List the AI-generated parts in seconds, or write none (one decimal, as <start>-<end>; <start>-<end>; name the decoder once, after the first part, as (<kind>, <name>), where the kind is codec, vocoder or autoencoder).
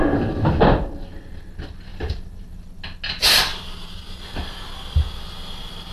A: 1.9-2.8 (vocoder, BigVGAN v2)